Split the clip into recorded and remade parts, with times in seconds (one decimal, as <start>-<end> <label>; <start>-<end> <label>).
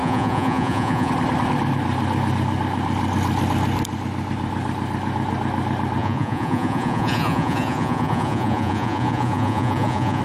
0.0-1.1 remade; 1.1-6.0 recorded; 6.0-10.2 remade